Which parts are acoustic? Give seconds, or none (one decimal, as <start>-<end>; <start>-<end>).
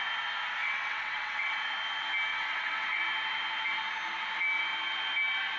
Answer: 0.0-0.6; 1.5-2.3; 3.0-5.6